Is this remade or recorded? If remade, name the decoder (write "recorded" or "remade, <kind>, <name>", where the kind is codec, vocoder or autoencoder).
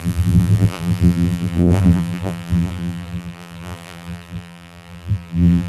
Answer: remade, vocoder, BigVGAN v2